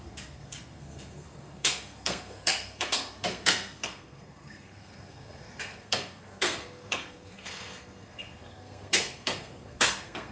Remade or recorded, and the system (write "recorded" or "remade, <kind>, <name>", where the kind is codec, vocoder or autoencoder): remade, codec, SNAC